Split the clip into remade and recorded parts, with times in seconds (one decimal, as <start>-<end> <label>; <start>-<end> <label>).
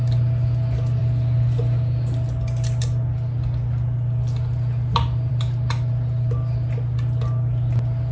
0.0-8.1 recorded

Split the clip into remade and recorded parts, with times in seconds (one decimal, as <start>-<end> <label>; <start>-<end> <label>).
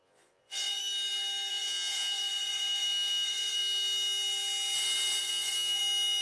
0.0-0.8 remade; 0.8-1.5 recorded; 1.5-3.6 remade; 3.6-5.2 recorded; 5.2-5.8 remade; 5.8-6.2 recorded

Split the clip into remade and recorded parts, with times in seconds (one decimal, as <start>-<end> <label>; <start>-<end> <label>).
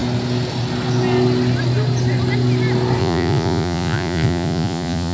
0.0-3.0 recorded; 3.0-5.1 remade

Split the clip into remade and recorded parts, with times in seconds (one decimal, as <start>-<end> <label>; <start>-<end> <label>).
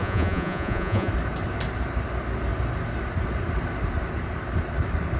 0.0-1.1 remade; 1.1-5.2 recorded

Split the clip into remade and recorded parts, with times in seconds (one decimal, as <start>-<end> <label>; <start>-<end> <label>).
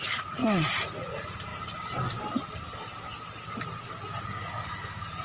0.0-1.5 remade; 1.5-4.2 recorded; 4.2-5.2 remade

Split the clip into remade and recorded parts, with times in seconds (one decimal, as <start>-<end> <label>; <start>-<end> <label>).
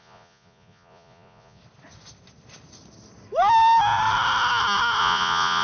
0.0-1.6 remade; 1.6-5.0 recorded; 5.0-5.6 remade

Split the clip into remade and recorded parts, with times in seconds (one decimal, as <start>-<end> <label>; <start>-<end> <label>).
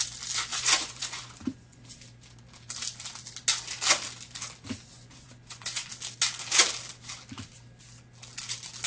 0.0-0.5 recorded; 0.5-1.8 remade; 1.8-4.9 recorded; 4.9-5.9 remade; 5.9-8.9 recorded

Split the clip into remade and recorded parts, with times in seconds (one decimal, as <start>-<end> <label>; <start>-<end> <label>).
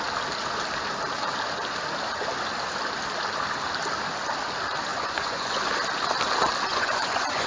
0.0-4.9 recorded; 4.9-5.7 remade; 5.7-6.7 recorded; 6.7-7.5 remade